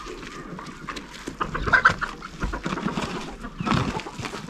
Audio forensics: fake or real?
real